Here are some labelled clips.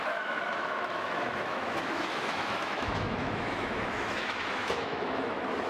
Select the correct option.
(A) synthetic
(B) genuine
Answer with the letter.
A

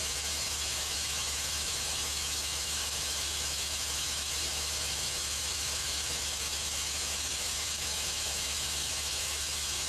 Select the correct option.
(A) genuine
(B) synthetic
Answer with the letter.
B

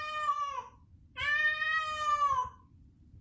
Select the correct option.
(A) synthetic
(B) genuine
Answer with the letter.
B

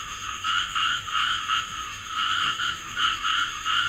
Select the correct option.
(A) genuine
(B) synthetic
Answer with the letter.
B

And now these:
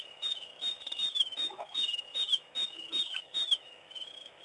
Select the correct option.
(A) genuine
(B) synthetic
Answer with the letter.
B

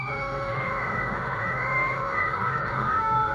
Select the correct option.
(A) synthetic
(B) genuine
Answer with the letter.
A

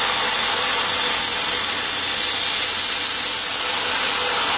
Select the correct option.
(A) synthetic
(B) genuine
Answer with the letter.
B